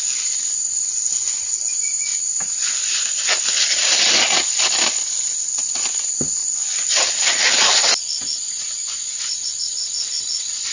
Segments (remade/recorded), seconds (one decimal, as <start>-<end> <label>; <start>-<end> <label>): 0.0-0.9 recorded; 0.9-1.7 remade; 1.7-10.7 recorded